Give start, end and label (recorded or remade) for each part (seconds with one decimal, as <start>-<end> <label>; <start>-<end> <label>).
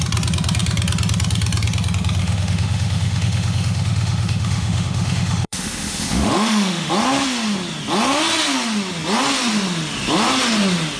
0.0-2.2 recorded; 2.2-6.9 remade; 6.9-11.0 recorded